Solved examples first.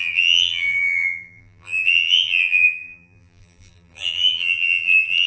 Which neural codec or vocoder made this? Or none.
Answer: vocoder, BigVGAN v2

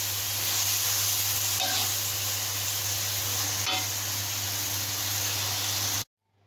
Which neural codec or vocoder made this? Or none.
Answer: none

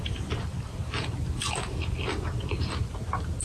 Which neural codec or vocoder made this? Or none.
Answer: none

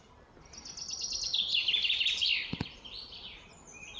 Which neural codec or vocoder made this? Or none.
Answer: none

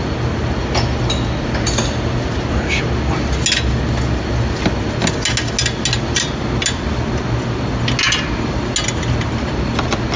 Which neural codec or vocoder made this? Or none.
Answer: none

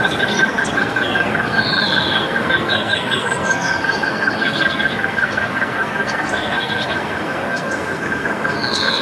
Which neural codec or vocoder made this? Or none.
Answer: codec, SNAC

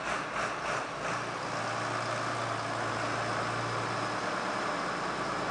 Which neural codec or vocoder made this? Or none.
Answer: none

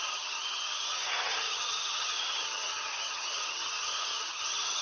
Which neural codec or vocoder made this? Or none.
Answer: vocoder, HiFi-GAN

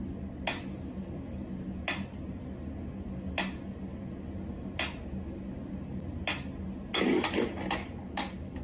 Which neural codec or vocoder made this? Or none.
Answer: none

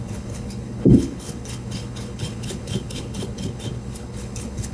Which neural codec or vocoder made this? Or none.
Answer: codec, HILCodec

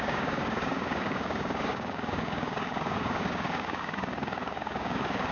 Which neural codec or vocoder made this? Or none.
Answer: codec, DAC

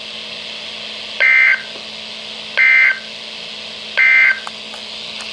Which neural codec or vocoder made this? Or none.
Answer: none